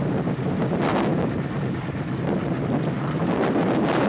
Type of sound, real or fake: fake